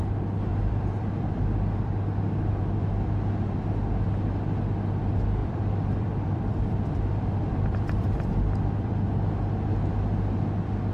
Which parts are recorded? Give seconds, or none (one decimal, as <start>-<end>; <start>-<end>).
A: 0.0-0.5; 1.9-5.4; 8.9-10.9

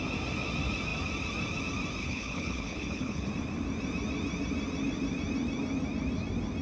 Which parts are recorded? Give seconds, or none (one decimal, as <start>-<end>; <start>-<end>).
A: 0.0-2.0; 3.3-6.6

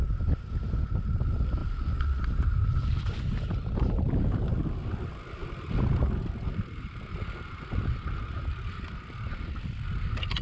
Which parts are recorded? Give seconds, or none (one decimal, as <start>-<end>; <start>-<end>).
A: 0.0-1.6; 4.0-10.4

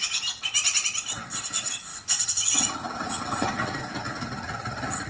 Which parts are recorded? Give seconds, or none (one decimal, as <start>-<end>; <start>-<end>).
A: 0.0-1.9

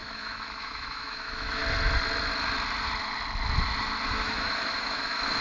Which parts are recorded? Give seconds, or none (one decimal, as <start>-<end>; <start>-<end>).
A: 1.6-4.1

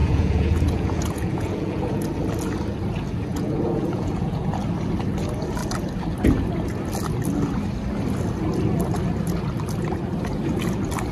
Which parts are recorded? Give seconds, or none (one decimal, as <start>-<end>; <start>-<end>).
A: 2.0-3.3; 4.5-11.1

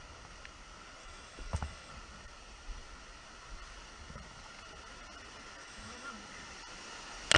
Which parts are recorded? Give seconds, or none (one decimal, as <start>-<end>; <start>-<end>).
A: 0.0-1.0; 1.9-5.6; 6.1-7.4

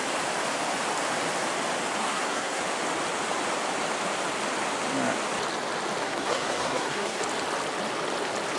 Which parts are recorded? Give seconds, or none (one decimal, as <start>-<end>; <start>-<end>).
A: 0.0-2.0; 2.6-6.0; 7.2-8.6